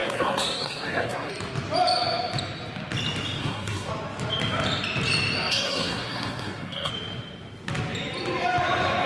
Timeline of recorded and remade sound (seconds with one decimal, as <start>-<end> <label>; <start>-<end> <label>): 0.0-1.3 remade; 1.3-3.4 recorded; 3.4-3.9 remade; 3.9-5.5 recorded; 5.5-6.9 remade; 6.9-9.1 recorded